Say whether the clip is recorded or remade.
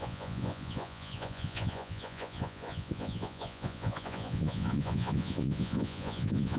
remade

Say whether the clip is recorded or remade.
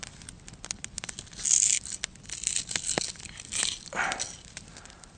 recorded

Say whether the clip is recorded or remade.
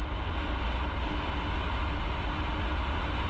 recorded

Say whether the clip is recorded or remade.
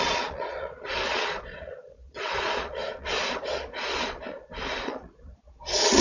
remade